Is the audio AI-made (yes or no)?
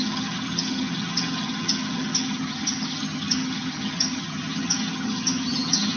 yes